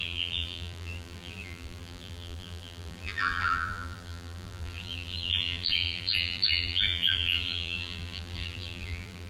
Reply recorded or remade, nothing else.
remade